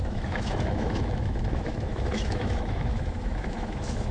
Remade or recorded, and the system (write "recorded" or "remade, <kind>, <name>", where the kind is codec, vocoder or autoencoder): remade, autoencoder, DAC-VAE